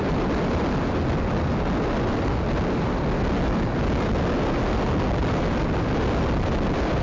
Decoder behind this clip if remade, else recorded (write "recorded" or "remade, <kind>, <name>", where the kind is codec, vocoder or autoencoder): recorded